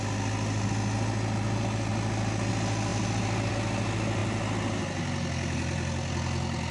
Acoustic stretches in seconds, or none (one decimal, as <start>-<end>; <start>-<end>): 0.0-6.7